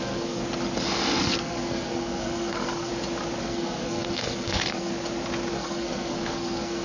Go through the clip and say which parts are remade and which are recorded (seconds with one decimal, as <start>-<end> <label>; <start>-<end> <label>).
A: 0.0-0.4 remade; 0.4-1.2 recorded; 1.2-2.9 remade; 2.9-3.4 recorded; 3.4-4.9 remade; 4.9-5.5 recorded; 5.5-6.8 remade